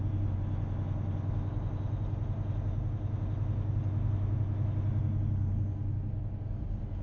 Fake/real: real